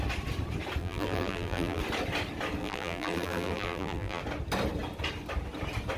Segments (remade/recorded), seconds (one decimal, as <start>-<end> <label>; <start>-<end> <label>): 0.0-0.8 recorded; 0.8-1.8 remade; 1.8-2.6 recorded; 2.6-4.2 remade; 4.2-6.0 recorded